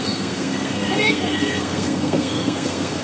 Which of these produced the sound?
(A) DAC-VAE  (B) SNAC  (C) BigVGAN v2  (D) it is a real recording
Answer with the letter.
B